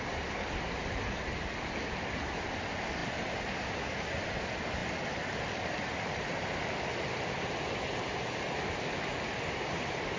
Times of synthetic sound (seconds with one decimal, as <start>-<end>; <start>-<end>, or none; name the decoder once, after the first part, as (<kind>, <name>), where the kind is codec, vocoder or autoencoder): none